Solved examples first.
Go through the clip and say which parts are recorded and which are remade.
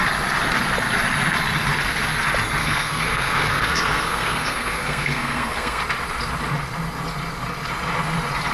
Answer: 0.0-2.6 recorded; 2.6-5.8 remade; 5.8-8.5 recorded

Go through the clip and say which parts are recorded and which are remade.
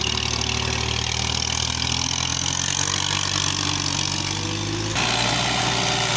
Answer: 0.0-6.2 recorded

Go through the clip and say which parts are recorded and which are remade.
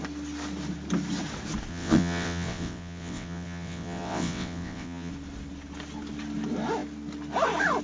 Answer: 0.0-1.7 recorded; 1.7-5.1 remade; 5.1-7.8 recorded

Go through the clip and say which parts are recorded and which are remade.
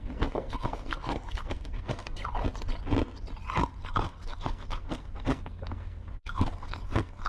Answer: 0.0-2.2 remade; 2.2-3.9 recorded; 3.9-7.3 remade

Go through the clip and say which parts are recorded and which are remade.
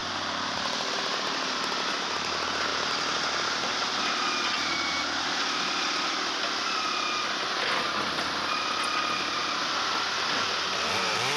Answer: 0.0-1.6 remade; 1.6-11.4 recorded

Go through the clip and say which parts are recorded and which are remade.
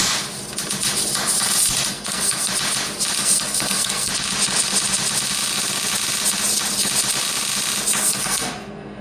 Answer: 0.0-1.9 recorded; 1.9-2.5 remade; 2.5-3.2 recorded; 3.2-4.1 remade; 4.1-8.0 recorded; 8.0-9.0 remade